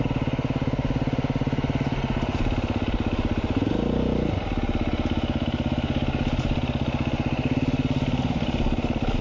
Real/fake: real